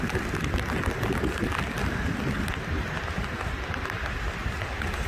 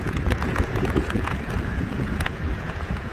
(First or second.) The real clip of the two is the first